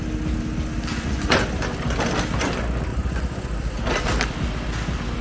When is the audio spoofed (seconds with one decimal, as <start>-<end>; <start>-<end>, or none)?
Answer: 0.9-1.4; 2.9-3.5